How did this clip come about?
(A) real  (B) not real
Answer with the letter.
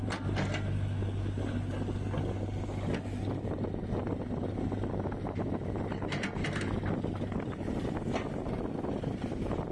A